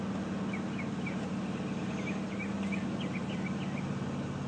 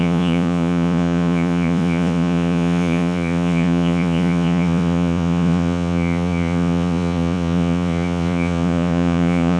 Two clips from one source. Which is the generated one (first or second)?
second